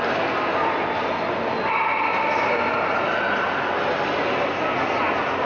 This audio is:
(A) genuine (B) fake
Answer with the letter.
A